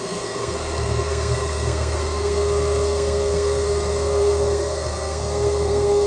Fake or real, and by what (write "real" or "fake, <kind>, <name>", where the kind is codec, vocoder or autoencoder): fake, codec, SNAC